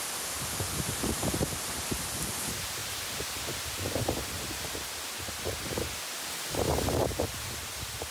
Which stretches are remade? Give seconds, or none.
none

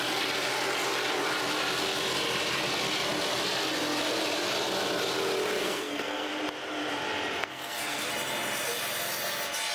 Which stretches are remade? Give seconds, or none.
5.6-6.3 (codec, SNAC); 7.4-8.1

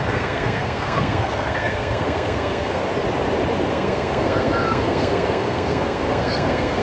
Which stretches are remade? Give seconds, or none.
0.0-2.8 (codec, SNAC); 3.7-6.8

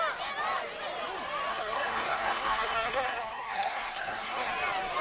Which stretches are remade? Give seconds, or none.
1.5-4.5 (codec, SNAC)

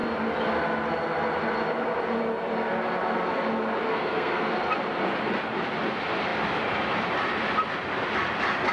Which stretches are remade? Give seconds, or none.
3.9-4.5 (codec, SNAC)

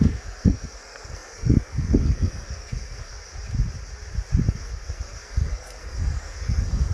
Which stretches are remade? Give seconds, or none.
0.0-3.1 (codec, SNAC); 4.5-6.9

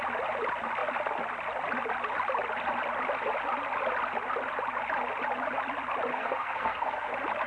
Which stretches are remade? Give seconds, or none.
6.1-7.1 (codec, SNAC)

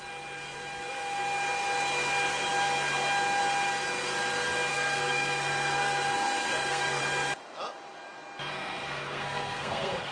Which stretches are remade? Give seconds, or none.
4.7-7.0 (codec, SNAC); 8.5-10.1